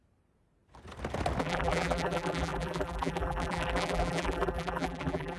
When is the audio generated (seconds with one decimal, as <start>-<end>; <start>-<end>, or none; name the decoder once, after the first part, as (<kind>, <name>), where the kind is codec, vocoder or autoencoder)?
1.4-5.4 (vocoder, BigVGAN v2)